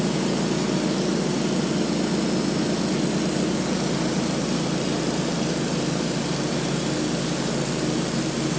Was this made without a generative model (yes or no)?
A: yes